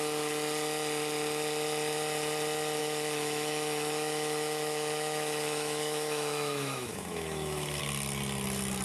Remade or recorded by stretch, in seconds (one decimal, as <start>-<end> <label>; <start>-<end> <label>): 0.0-2.8 recorded; 2.8-7.8 remade; 7.8-8.8 recorded